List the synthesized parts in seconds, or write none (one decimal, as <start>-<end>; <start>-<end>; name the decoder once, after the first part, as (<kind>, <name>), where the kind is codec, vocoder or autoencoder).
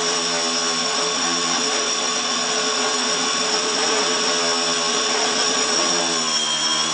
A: 0.8-4.3 (vocoder, Vocos); 4.9-6.0